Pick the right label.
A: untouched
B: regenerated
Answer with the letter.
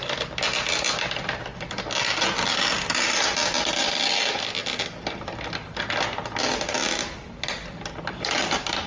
A